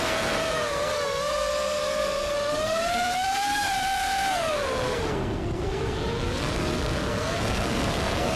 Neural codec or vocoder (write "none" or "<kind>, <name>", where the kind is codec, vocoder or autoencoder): codec, SNAC